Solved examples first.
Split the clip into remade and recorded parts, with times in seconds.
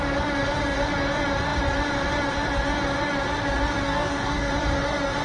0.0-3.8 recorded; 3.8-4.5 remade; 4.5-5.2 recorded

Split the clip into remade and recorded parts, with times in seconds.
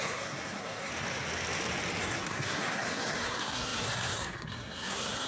0.0-0.9 remade; 0.9-2.0 recorded; 2.0-5.3 remade